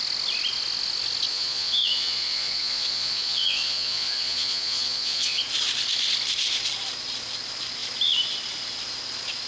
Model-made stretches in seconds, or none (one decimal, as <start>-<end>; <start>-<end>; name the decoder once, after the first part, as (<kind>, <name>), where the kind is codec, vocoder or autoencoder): 1.3-5.4 (vocoder, Vocos)